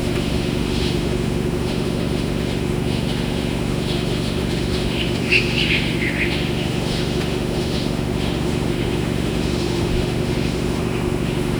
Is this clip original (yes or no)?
no